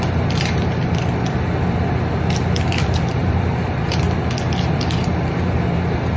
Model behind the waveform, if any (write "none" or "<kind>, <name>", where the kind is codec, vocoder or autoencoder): none